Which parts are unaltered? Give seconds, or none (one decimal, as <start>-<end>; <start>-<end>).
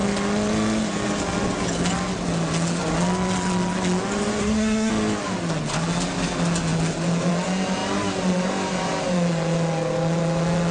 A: 0.0-4.4; 4.9-10.7